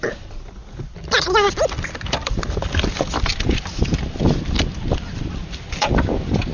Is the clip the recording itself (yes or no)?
no